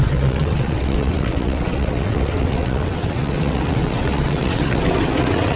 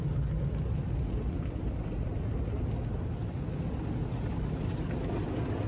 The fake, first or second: first